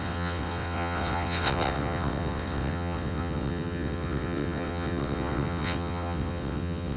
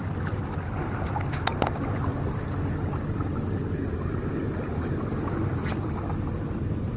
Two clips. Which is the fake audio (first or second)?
first